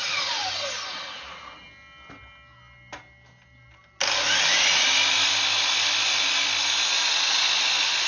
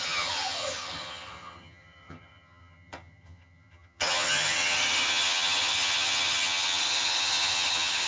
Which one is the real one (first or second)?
first